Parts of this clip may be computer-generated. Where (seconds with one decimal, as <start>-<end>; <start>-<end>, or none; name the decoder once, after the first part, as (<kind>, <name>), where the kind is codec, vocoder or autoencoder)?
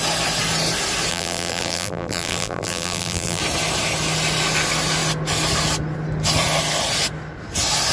1.1-3.4 (vocoder, BigVGAN v2)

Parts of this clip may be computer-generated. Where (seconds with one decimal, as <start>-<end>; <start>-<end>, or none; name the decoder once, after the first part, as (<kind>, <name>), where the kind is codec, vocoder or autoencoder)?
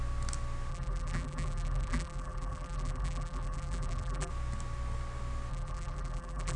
0.7-4.3 (vocoder, BigVGAN v2); 5.5-6.6